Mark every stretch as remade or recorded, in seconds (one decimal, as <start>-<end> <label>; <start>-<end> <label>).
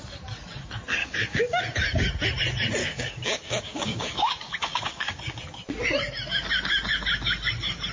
0.0-1.0 recorded; 1.0-1.6 remade; 1.6-2.8 recorded; 2.8-5.4 remade; 5.4-7.9 recorded